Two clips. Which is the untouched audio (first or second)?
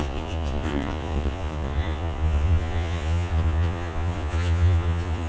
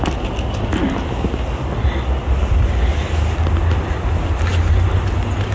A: second